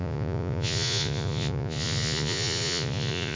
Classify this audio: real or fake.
fake